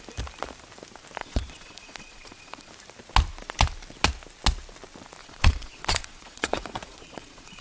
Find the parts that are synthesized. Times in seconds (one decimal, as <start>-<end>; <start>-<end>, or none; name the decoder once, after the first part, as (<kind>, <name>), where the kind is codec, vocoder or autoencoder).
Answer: 1.2-2.7 (vocoder, Vocos); 5.2-7.6